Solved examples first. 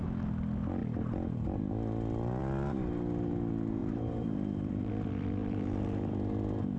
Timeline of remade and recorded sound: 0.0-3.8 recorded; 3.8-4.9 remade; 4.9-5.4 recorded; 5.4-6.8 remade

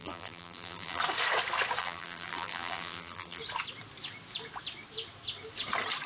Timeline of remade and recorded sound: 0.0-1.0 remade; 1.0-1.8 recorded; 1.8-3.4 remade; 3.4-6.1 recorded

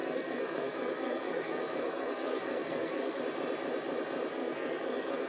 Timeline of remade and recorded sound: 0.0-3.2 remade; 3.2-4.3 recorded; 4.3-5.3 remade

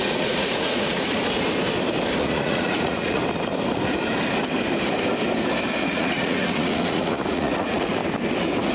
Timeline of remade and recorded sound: 0.0-1.2 remade; 1.2-2.2 recorded; 2.2-3.2 remade; 3.2-5.9 recorded; 5.9-8.0 remade; 8.0-8.7 recorded

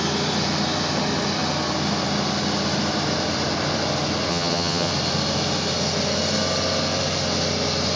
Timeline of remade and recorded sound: 0.0-4.3 recorded; 4.3-4.9 remade; 4.9-8.0 recorded

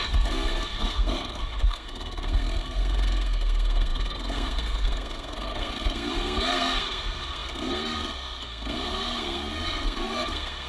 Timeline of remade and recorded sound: 0.0-10.7 remade